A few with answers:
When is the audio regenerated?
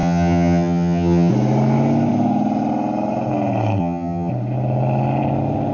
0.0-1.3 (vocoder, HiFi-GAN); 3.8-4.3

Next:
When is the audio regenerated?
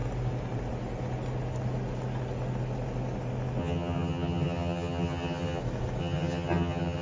3.6-5.6 (vocoder, HiFi-GAN); 6.0-7.0